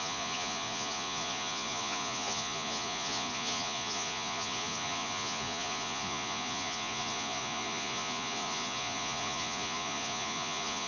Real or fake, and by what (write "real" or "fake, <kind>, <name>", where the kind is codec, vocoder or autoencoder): fake, vocoder, Vocos